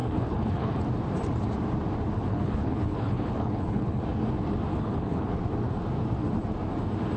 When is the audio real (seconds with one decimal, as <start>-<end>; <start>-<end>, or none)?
0.8-2.3; 4.0-4.7; 5.4-7.2